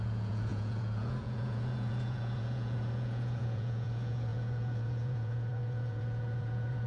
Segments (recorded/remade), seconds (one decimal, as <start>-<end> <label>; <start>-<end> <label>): 0.0-6.9 remade